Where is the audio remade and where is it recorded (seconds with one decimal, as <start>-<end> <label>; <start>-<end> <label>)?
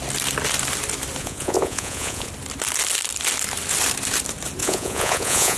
0.0-1.2 recorded; 1.2-2.3 remade; 2.3-4.6 recorded; 4.6-5.6 remade